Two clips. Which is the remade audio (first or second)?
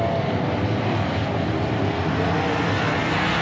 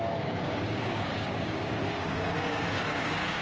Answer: second